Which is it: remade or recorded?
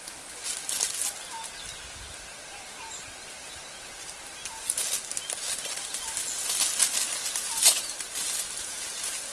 recorded